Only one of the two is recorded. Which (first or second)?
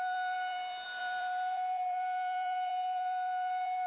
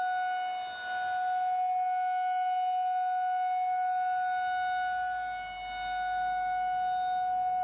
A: second